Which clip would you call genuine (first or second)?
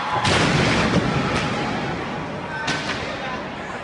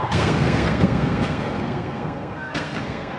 first